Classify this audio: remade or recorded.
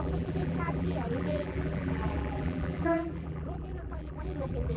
remade